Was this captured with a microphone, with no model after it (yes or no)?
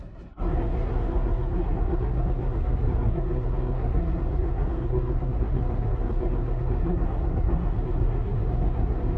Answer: no